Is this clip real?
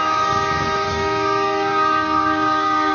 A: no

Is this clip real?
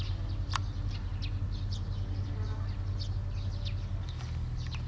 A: yes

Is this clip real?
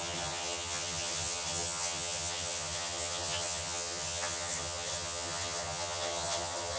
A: no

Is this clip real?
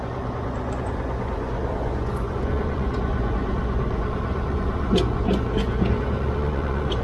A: no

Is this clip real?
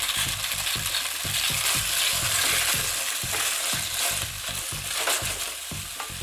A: yes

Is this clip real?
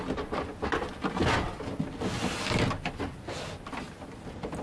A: yes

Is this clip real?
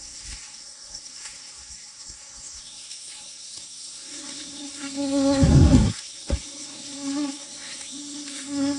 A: no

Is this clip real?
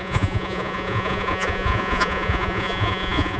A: no